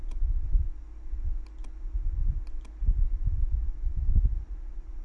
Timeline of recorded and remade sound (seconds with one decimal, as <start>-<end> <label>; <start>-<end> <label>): 0.0-0.8 remade; 0.8-3.4 recorded; 3.4-5.0 remade